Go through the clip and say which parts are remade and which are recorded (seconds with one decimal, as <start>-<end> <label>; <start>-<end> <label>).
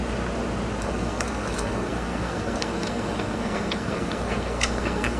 0.0-0.8 recorded; 0.8-5.2 remade